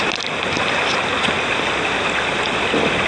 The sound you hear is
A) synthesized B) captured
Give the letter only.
B